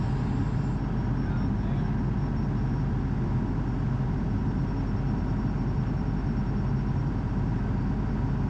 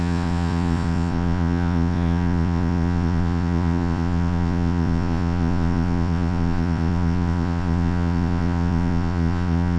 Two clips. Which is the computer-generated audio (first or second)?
second